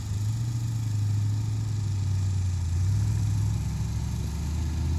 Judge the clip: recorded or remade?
recorded